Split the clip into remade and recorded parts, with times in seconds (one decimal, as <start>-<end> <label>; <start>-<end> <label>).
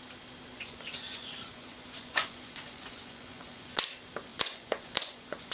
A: 0.0-0.5 recorded; 0.5-3.8 remade; 3.8-4.3 recorded; 4.3-5.5 remade